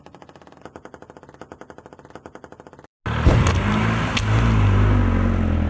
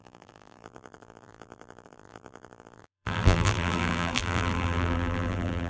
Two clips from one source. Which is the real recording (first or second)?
first